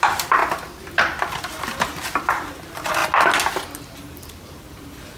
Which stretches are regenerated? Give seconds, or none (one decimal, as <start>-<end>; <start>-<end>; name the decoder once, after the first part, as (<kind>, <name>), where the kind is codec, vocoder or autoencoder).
0.0-0.4 (vocoder, BigVGAN v2); 1.5-3.0; 3.8-5.2